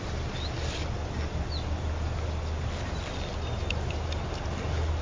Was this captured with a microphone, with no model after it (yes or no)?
yes